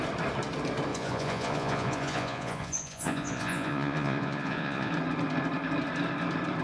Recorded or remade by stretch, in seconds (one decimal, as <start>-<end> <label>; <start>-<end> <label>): 0.0-0.9 recorded; 0.9-4.9 remade; 4.9-6.6 recorded